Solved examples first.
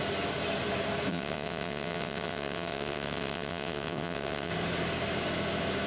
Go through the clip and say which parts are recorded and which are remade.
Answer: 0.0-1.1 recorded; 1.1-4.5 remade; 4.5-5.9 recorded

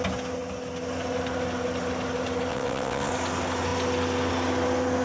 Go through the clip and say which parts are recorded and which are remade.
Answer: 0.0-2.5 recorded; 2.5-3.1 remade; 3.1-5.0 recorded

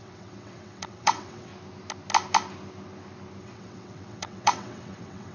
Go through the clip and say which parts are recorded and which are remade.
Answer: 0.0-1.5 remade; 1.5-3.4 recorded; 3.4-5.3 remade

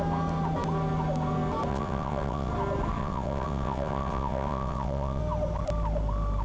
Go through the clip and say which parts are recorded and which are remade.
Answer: 0.0-1.7 recorded; 1.7-2.5 remade; 2.5-3.0 recorded; 3.0-5.2 remade; 5.2-6.4 recorded

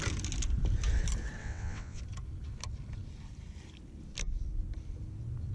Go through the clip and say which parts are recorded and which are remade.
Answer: 0.0-1.4 recorded; 1.4-2.0 remade; 2.0-5.5 recorded